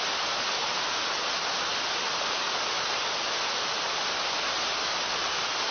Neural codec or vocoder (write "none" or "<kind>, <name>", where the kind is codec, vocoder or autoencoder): none